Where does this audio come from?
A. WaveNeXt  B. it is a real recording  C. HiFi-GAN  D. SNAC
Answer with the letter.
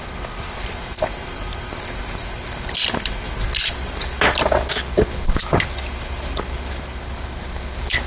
B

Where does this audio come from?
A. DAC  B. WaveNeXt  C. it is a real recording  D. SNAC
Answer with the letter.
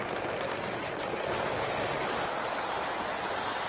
C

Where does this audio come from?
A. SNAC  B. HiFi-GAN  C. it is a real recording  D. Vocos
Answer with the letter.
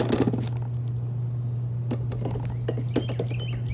C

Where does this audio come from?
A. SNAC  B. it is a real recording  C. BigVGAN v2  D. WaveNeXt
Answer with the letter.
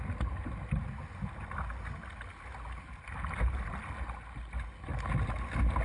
B